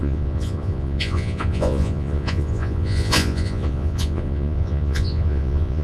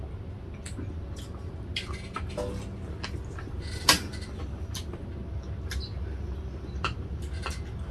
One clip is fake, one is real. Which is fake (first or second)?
first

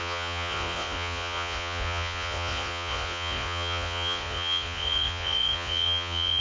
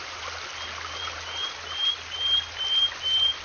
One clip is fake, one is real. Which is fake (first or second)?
first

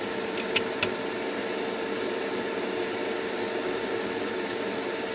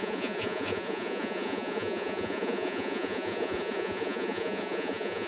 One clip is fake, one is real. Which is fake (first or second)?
second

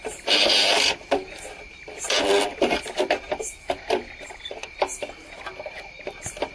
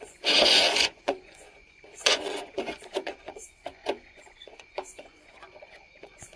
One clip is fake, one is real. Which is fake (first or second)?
second